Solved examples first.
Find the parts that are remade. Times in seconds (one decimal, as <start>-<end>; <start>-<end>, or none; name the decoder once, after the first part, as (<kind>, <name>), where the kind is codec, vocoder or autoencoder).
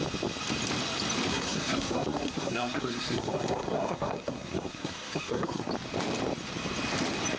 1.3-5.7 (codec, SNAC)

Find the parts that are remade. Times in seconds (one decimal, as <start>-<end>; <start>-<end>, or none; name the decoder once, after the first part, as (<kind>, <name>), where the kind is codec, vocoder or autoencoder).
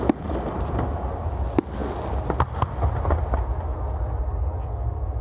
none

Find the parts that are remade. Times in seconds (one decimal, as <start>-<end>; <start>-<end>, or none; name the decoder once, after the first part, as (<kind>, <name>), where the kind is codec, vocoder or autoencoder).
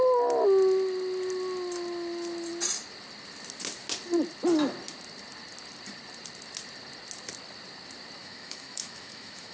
8.2-9.5 (autoencoder, DAC-VAE)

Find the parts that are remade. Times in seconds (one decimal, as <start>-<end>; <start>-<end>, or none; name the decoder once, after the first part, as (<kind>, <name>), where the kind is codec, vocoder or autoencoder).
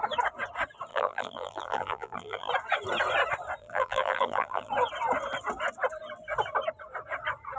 0.9-2.5 (vocoder, BigVGAN v2); 3.6-4.7